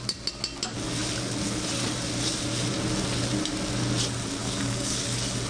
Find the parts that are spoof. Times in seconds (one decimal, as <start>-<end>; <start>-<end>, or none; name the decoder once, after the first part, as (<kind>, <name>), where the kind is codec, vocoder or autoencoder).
4.4-5.0 (codec, DAC)

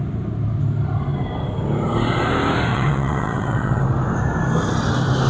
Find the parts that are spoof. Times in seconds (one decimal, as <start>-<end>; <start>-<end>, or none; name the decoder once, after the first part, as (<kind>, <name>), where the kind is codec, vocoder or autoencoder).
2.7-3.8 (vocoder, WaveNeXt)